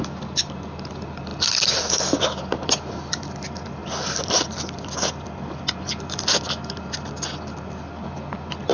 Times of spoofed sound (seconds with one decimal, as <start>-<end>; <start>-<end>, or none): none